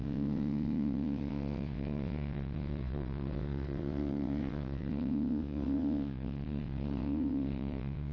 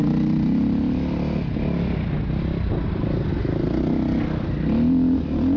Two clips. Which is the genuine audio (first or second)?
second